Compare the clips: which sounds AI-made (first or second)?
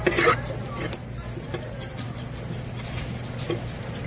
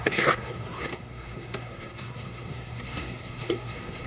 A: second